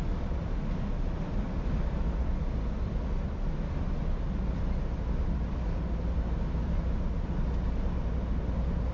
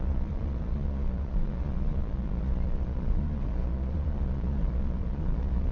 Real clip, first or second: first